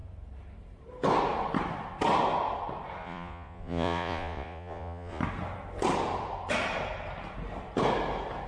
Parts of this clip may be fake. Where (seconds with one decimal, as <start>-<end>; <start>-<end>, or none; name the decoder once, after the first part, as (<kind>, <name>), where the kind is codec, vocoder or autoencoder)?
3.0-5.2 (vocoder, Vocos)